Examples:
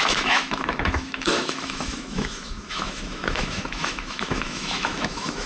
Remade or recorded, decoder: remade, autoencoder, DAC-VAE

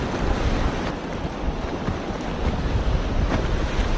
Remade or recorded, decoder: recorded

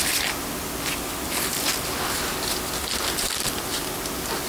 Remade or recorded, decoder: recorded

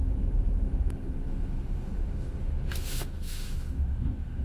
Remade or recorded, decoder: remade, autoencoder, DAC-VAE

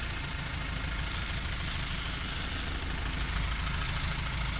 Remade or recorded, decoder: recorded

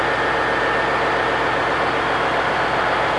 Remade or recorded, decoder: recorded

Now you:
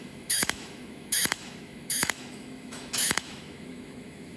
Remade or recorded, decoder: remade, autoencoder, DAC-VAE